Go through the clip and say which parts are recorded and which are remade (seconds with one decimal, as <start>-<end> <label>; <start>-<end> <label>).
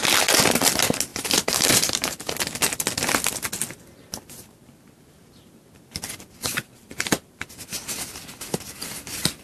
0.0-1.1 recorded; 1.1-2.2 remade; 2.2-6.5 recorded; 6.5-7.4 remade; 7.4-9.4 recorded